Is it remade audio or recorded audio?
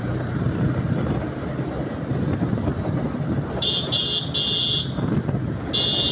recorded